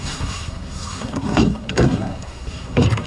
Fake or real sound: fake